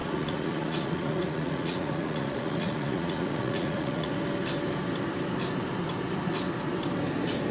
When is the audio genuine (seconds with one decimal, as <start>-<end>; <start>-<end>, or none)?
4.1-7.5